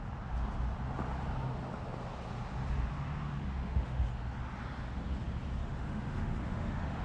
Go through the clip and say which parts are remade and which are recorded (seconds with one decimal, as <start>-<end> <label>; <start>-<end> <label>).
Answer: 0.0-3.5 recorded; 3.5-4.1 remade; 4.1-5.6 recorded; 5.6-7.0 remade